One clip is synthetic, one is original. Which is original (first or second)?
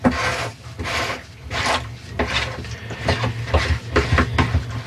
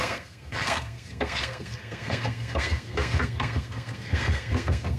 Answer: first